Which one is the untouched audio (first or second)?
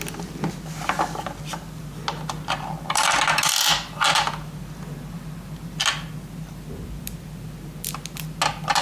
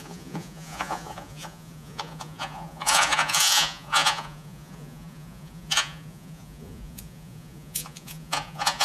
first